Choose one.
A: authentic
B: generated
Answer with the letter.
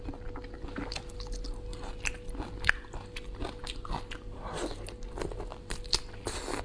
A